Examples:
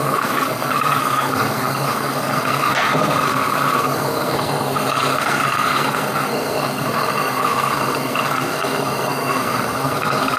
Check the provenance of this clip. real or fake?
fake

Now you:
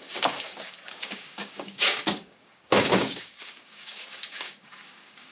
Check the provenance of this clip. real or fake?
fake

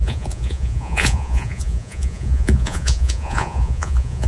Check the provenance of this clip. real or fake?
fake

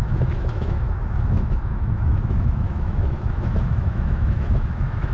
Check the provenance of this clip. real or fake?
fake